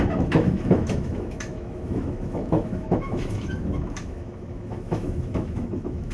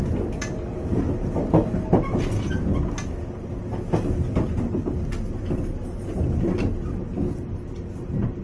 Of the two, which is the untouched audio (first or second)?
second